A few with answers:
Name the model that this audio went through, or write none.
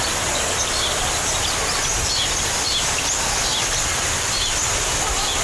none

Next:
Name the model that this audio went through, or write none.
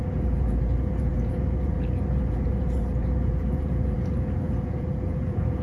vocoder, Vocos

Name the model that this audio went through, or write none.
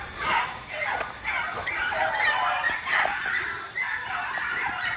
none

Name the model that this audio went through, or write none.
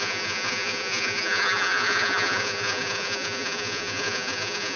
vocoder, Vocos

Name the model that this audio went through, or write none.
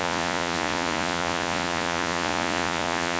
vocoder, Vocos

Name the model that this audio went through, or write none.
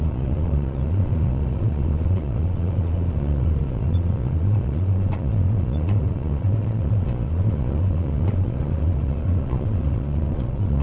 vocoder, Vocos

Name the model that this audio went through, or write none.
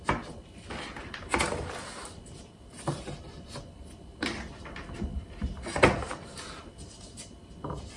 none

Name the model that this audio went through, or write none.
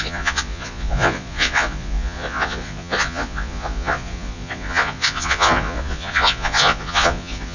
vocoder, Vocos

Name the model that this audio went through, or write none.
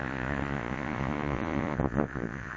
vocoder, Vocos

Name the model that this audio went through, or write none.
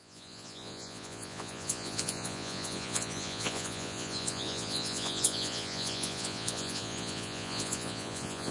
vocoder, Vocos